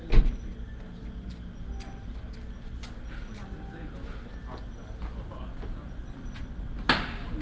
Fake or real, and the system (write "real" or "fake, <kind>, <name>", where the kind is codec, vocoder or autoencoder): real